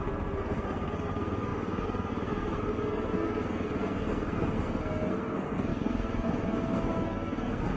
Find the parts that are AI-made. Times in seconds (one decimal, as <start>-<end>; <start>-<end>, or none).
0.0-7.8